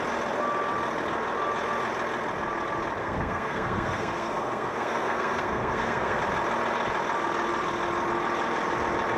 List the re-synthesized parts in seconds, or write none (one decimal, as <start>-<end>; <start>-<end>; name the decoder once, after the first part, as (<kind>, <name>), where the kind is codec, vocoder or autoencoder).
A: 3.0-6.2 (codec, SNAC)